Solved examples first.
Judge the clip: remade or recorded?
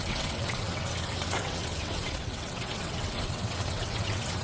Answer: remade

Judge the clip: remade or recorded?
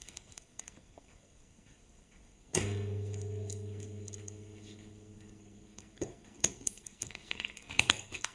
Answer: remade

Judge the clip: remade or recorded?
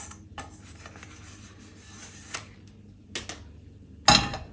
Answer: recorded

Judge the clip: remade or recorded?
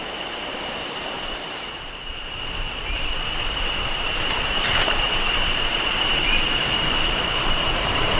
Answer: remade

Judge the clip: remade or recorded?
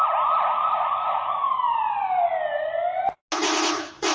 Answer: recorded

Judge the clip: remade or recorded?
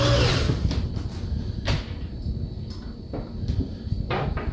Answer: recorded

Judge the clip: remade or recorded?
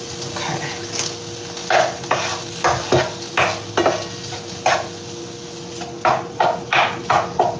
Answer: recorded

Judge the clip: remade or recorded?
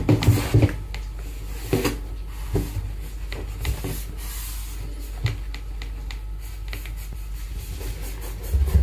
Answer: recorded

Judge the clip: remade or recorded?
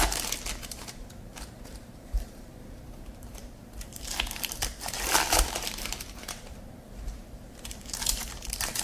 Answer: remade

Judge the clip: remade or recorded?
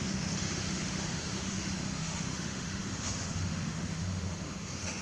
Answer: remade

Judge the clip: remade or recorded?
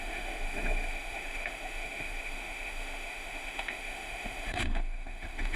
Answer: remade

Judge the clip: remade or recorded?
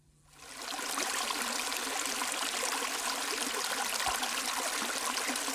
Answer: recorded